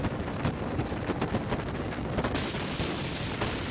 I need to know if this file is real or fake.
real